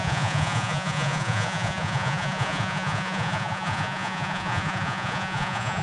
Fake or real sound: fake